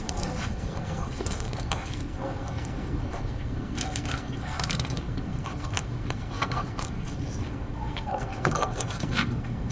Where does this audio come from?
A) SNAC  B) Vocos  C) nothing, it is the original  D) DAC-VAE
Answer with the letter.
A